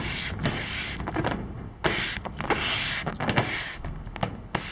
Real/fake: real